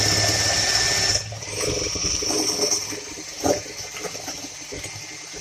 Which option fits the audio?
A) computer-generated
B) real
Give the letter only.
B